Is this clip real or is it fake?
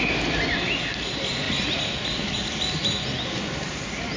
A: real